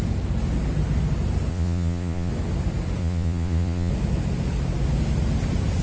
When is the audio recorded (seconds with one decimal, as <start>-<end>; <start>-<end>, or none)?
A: 0.0-1.5; 2.3-3.0; 3.9-5.8

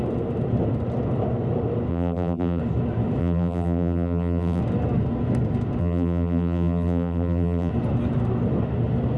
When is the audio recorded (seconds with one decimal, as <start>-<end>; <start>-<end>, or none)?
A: 0.0-1.9; 2.6-3.2; 4.6-5.8; 7.7-9.2

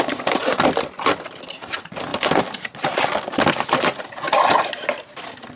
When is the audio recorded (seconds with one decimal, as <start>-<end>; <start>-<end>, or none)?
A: 0.0-5.6

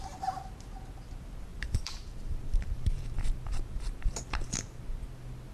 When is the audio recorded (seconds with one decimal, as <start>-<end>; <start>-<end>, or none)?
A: 0.0-1.5; 4.8-5.5